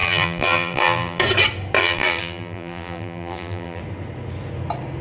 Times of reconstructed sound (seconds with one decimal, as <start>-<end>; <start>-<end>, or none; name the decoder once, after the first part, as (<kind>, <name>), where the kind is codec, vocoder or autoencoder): 0.0-1.2 (vocoder, BigVGAN v2); 1.8-3.8